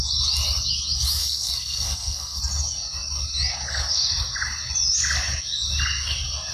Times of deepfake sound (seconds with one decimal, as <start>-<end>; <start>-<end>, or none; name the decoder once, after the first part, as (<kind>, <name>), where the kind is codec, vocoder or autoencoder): 1.2-2.4 (codec, SNAC)